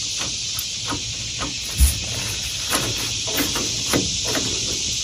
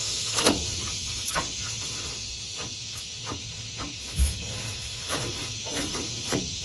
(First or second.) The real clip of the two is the first